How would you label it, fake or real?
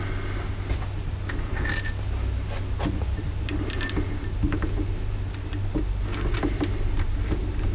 real